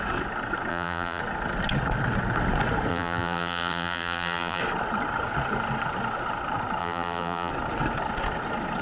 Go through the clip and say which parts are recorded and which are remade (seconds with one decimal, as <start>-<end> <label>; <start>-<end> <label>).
0.0-0.7 recorded; 0.7-1.2 remade; 1.2-2.9 recorded; 2.9-4.6 remade; 4.6-6.8 recorded; 6.8-7.5 remade; 7.5-8.8 recorded